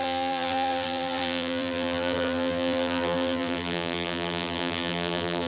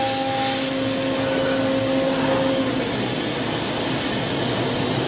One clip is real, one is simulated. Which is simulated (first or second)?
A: first